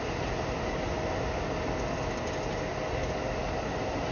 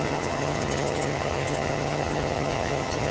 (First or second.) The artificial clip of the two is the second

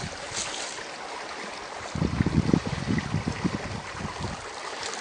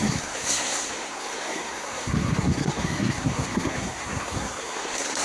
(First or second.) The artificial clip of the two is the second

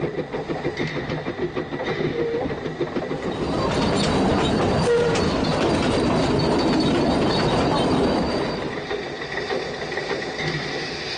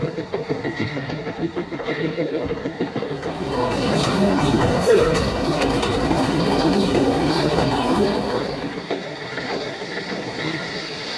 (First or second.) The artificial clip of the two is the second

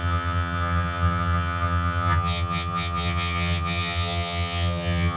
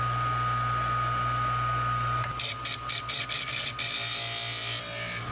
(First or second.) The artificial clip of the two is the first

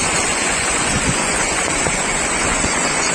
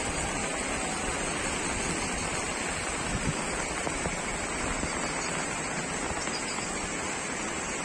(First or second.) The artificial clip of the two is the first